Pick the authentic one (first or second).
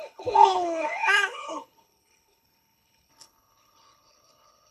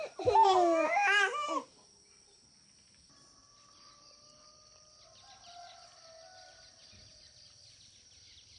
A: second